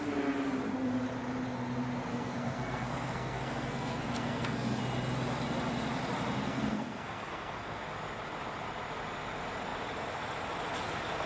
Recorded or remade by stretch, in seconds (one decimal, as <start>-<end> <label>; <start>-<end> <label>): 0.0-2.1 recorded; 2.1-4.8 remade; 4.8-6.4 recorded; 6.4-7.8 remade; 7.8-11.3 recorded